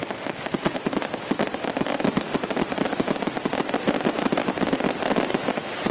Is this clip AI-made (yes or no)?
no